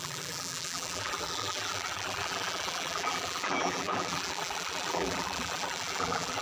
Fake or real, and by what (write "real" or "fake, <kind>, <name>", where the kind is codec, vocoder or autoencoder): fake, vocoder, BigVGAN v2